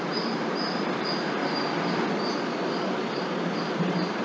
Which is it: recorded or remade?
recorded